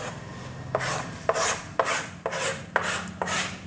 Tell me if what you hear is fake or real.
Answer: real